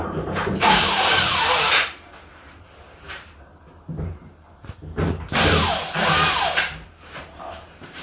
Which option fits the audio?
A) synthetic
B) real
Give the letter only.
A